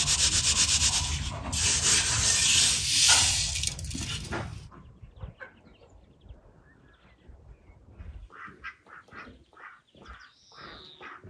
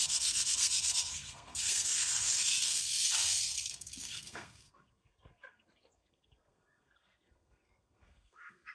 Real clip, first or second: first